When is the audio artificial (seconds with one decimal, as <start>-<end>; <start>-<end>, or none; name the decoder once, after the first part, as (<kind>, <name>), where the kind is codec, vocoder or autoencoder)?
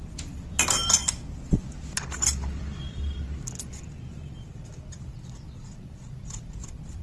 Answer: 0.0-1.0 (vocoder, BigVGAN v2); 1.6-3.0; 4.7-7.0